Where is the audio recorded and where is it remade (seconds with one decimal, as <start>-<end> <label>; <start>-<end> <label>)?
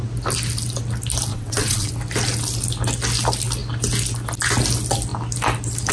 0.0-1.3 recorded; 1.3-1.9 remade; 1.9-5.9 recorded